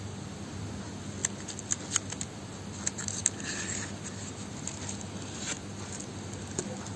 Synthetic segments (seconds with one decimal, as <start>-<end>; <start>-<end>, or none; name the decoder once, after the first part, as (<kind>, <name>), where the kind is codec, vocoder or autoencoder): 0.0-1.2 (vocoder, BigVGAN v2); 1.8-3.2; 6.1-7.0